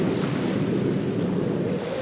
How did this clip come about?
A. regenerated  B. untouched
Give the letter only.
B